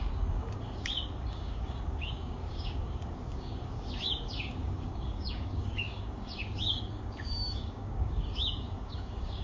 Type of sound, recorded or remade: remade